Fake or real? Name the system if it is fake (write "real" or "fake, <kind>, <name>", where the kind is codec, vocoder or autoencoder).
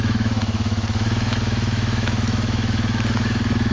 fake, autoencoder, DAC-VAE